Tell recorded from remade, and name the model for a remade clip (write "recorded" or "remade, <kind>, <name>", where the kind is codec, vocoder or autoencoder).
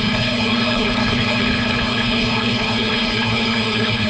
remade, codec, HILCodec